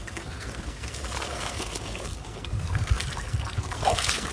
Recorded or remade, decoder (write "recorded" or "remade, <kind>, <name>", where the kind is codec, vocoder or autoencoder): remade, codec, SNAC